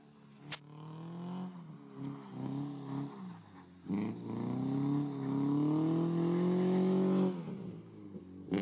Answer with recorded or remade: recorded